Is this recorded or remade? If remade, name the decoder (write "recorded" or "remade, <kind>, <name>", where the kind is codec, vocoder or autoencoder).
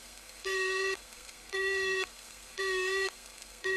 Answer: remade, codec, SNAC